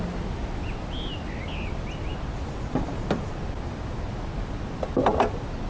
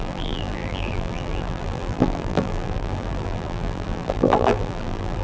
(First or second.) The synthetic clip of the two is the second